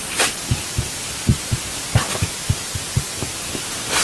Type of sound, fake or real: real